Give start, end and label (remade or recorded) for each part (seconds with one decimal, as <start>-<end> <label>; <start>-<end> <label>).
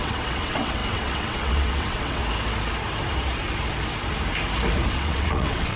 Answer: 0.0-2.2 remade; 2.2-4.9 recorded; 4.9-5.8 remade